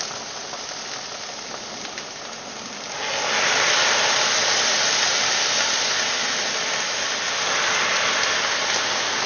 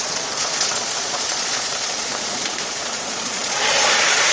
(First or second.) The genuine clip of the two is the first